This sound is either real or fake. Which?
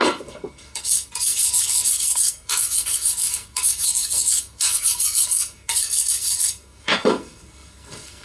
fake